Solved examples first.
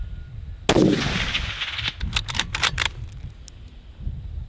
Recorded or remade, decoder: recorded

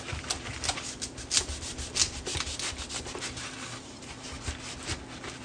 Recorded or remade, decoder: recorded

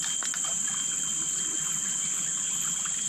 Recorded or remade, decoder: recorded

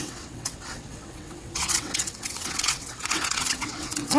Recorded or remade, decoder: remade, vocoder, WaveNeXt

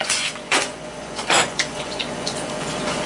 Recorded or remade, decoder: remade, vocoder, Vocos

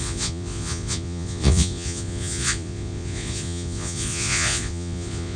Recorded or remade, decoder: remade, vocoder, Vocos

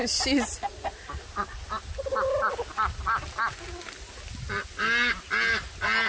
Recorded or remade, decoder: recorded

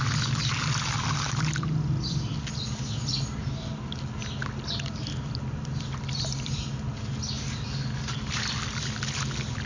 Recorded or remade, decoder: recorded